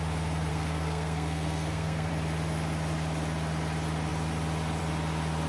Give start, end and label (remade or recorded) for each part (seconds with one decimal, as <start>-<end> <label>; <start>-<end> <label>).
0.0-0.5 recorded; 0.5-2.1 remade; 2.1-5.5 recorded